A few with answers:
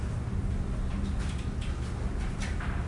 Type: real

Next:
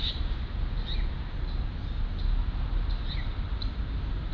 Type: real